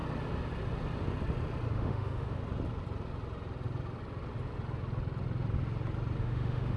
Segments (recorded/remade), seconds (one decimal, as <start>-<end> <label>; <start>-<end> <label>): 0.0-1.7 recorded; 1.7-2.4 remade; 2.4-6.2 recorded; 6.2-6.8 remade